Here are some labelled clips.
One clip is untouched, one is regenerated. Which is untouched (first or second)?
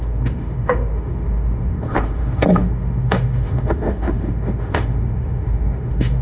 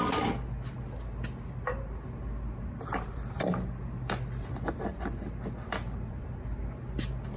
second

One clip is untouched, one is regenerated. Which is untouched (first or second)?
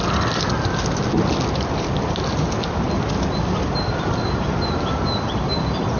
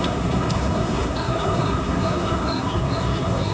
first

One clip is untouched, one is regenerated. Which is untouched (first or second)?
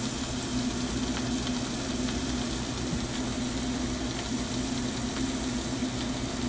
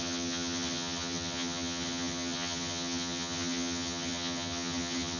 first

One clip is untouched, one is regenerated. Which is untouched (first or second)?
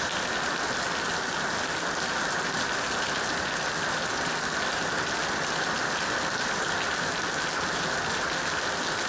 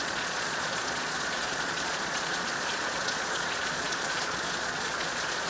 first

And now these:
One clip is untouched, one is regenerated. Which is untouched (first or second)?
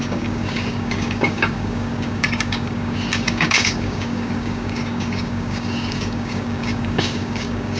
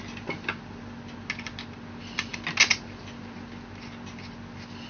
second